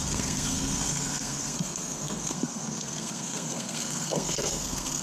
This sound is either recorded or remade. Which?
remade